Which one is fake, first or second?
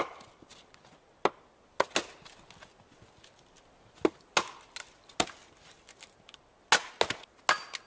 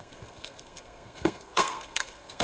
second